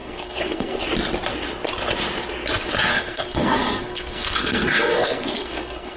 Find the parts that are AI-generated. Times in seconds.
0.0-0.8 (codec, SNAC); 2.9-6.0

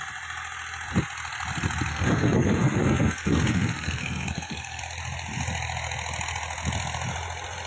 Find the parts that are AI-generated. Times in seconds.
1.9-4.8 (codec, SNAC)

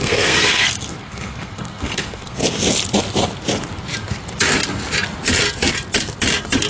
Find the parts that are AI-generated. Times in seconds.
0.0-2.4 (codec, SNAC)

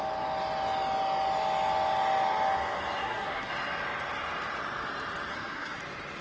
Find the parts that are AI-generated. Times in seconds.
3.0-3.5 (codec, SNAC); 5.3-5.8